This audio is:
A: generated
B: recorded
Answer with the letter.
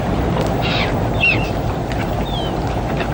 A